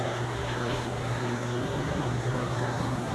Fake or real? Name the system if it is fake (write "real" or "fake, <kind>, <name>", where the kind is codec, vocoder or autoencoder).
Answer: fake, codec, SNAC